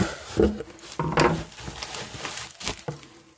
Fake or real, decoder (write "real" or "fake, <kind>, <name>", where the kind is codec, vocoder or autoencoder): real